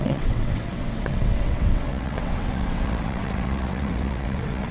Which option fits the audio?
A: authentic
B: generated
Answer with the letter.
B